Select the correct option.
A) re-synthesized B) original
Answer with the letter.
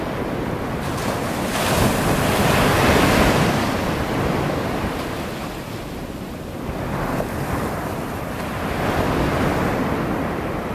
B